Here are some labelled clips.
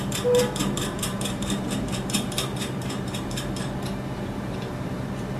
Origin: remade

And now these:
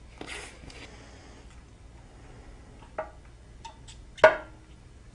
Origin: recorded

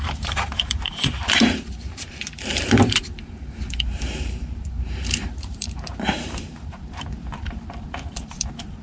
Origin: remade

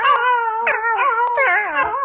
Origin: recorded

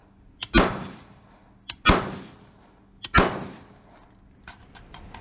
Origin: recorded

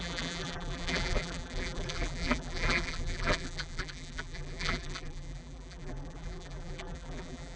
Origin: remade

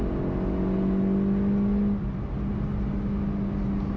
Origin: recorded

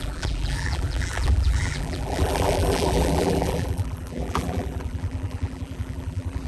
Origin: remade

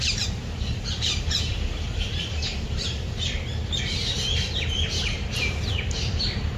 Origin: remade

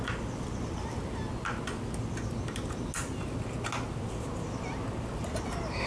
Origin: recorded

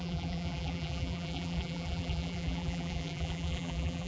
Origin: remade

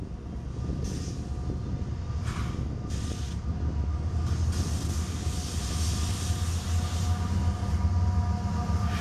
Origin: recorded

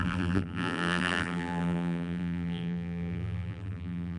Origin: remade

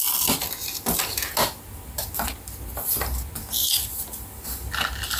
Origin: recorded